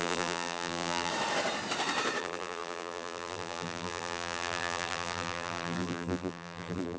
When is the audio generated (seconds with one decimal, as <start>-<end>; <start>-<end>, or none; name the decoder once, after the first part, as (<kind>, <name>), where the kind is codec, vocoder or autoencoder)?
0.0-1.1 (vocoder, BigVGAN v2); 2.2-7.0